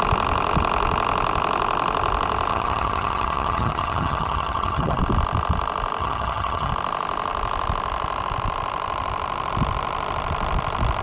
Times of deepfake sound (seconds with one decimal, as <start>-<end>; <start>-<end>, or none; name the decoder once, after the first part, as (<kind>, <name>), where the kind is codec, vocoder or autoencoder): 2.5-5.0 (vocoder, HiFi-GAN); 6.0-6.7